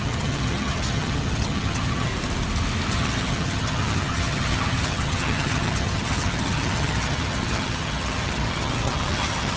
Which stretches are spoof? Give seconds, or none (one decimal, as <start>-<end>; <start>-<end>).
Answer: 0.0-2.1; 2.9-9.6

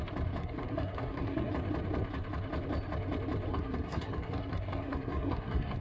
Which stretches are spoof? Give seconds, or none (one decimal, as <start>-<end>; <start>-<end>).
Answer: 0.4-1.5; 3.5-5.8

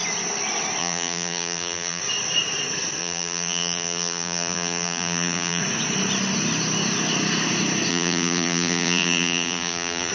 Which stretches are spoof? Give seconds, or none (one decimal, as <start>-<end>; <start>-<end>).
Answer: 0.8-2.0; 3.0-5.6; 7.9-10.1

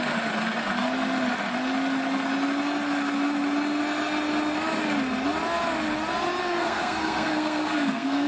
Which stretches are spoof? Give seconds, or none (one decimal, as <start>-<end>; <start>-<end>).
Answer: 6.4-8.3

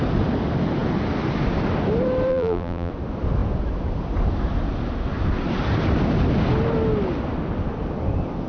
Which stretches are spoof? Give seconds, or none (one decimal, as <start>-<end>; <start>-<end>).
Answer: 2.3-2.9

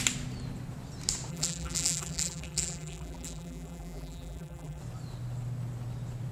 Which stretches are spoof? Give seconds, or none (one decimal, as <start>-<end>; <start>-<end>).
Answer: 1.3-4.8

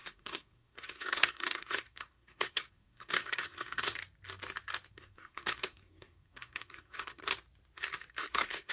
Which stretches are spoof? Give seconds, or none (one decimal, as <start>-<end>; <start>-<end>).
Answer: 0.0-4.0; 4.9-7.2; 8.1-8.7

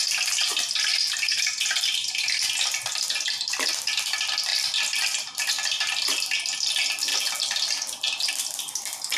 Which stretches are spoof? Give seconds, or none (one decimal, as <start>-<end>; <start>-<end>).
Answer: none